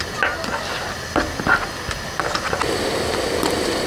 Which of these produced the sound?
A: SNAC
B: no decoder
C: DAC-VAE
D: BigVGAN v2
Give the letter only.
B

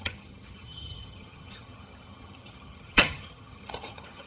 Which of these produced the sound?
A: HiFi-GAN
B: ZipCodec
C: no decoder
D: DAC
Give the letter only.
A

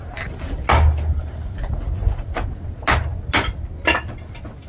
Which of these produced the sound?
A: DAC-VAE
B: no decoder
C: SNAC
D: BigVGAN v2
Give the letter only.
B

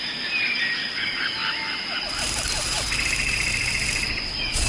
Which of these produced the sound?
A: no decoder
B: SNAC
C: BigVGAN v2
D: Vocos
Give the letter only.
C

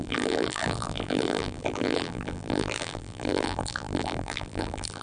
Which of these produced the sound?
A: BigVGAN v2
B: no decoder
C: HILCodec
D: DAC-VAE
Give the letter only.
A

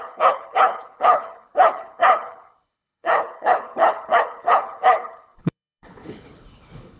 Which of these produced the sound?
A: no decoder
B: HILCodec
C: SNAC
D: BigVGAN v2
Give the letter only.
B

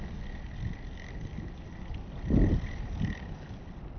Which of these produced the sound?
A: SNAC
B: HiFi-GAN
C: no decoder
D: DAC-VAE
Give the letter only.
C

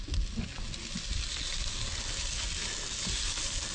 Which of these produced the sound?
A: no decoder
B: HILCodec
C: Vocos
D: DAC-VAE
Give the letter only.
A